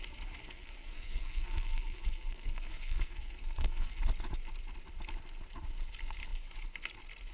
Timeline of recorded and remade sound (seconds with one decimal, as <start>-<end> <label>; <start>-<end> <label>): 0.0-0.4 recorded; 0.4-4.0 remade; 4.0-7.3 recorded